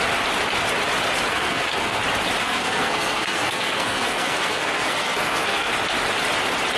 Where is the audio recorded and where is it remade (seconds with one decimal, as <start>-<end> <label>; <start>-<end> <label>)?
0.0-1.3 recorded; 1.3-2.0 remade; 2.0-2.4 recorded; 2.4-5.7 remade; 5.7-6.8 recorded